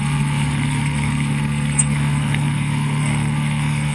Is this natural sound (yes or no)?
no